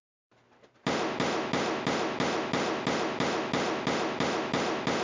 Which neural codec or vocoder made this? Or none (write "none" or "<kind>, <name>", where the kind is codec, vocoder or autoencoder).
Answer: none